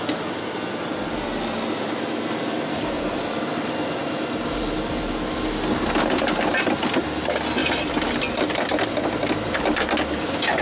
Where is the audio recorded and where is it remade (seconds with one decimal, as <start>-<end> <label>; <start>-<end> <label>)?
0.0-2.7 recorded; 2.7-3.2 remade; 3.2-10.6 recorded

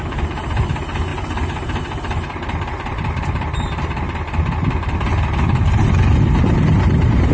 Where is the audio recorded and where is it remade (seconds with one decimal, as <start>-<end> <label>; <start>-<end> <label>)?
0.0-1.1 remade; 1.1-1.8 recorded; 1.8-5.1 remade; 5.1-6.6 recorded; 6.6-7.3 remade

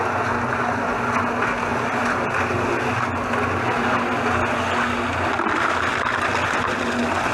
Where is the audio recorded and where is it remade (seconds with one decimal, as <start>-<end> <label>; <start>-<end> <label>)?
0.0-7.3 recorded

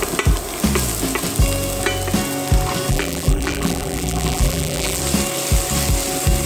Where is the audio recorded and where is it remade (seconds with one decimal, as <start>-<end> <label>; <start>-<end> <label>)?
0.0-2.9 recorded; 2.9-5.0 remade; 5.0-6.5 recorded